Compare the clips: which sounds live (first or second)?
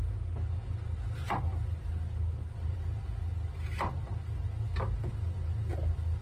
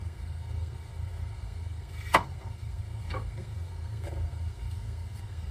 first